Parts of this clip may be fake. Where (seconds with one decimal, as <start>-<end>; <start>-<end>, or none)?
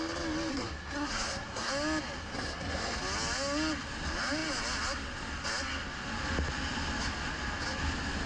0.5-1.7; 2.2-3.0